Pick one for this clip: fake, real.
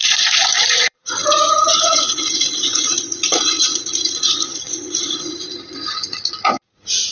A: fake